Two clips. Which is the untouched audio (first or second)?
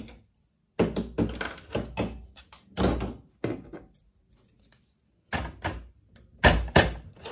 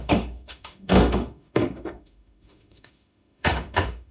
first